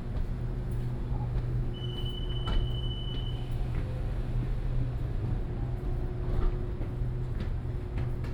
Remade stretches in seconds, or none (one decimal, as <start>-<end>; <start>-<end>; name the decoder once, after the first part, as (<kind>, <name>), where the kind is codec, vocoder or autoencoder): 1.1-1.7 (autoencoder, DAC-VAE)